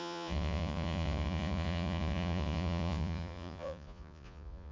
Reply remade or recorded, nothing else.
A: remade